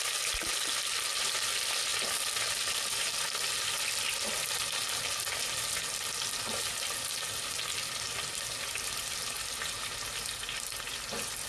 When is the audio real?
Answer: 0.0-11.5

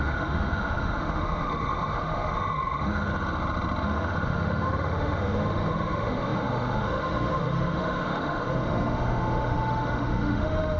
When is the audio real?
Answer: 3.1-3.8

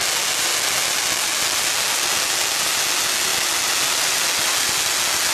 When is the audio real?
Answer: 0.0-5.3